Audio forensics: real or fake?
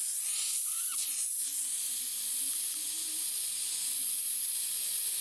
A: real